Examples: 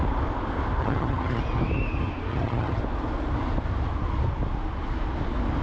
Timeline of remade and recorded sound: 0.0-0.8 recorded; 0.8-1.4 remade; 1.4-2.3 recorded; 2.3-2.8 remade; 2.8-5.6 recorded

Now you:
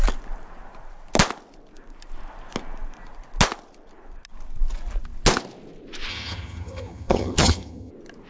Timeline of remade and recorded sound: 0.0-6.1 recorded; 6.1-7.9 remade; 7.9-8.3 recorded

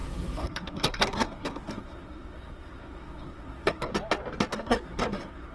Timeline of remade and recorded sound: 0.0-3.9 remade; 3.9-4.5 recorded; 4.5-5.5 remade

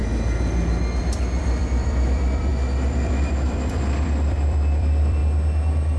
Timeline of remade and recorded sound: 0.0-1.0 recorded; 1.0-5.2 remade; 5.2-6.0 recorded

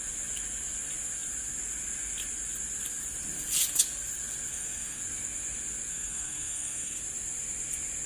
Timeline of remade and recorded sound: 0.0-4.5 recorded; 4.5-5.0 remade; 5.0-5.9 recorded; 5.9-7.0 remade; 7.0-8.1 recorded

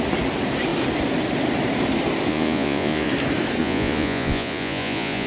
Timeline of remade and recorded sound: 0.0-2.3 recorded; 2.3-3.1 remade; 3.1-3.6 recorded; 3.6-5.3 remade

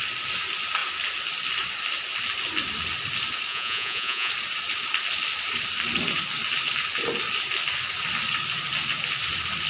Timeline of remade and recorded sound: 0.0-3.5 recorded; 3.5-4.3 remade; 4.3-9.7 recorded